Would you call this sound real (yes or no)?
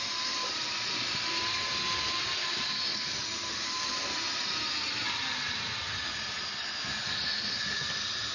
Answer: yes